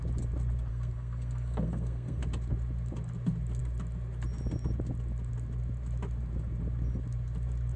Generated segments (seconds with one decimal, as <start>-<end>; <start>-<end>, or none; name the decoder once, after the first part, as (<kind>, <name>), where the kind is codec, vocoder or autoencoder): 0.7-2.2 (codec, SNAC)